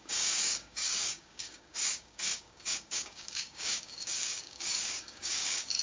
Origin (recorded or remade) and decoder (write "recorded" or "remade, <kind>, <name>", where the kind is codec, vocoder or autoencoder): remade, codec, DAC